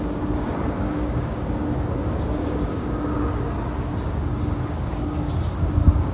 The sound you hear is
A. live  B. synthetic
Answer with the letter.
B